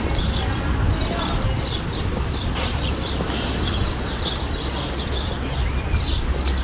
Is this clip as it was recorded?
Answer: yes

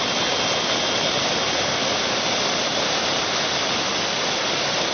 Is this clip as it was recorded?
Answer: yes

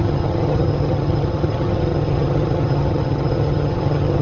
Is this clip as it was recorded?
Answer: no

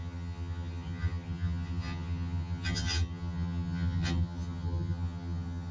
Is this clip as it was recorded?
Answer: no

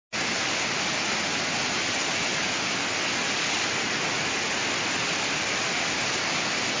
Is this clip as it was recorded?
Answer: yes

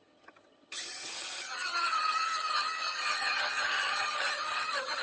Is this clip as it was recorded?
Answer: no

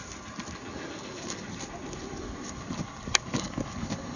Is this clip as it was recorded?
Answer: yes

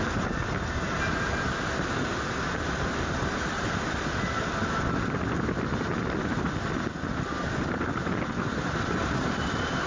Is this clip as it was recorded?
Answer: yes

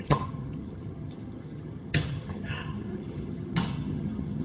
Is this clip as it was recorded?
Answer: no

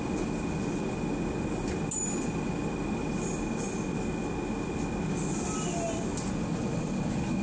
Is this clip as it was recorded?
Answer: yes